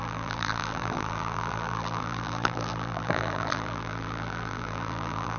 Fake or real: fake